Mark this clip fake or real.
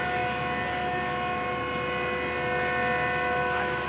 real